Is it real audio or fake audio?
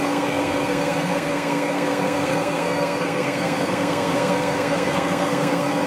fake